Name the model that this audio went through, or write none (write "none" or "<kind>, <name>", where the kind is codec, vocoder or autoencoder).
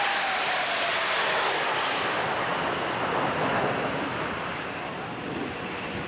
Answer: none